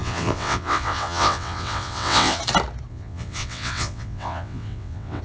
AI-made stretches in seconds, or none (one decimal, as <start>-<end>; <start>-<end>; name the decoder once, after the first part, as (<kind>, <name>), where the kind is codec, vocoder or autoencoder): 0.0-2.4 (vocoder, WaveNeXt); 2.9-5.2